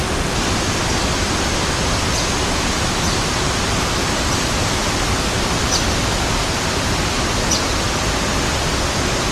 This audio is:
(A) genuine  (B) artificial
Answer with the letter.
A